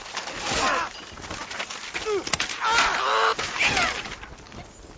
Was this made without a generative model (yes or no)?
yes